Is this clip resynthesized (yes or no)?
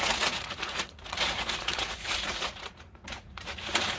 yes